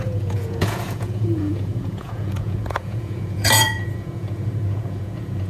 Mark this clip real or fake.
fake